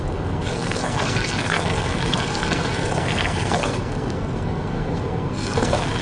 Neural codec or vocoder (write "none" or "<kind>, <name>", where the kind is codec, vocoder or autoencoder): codec, SNAC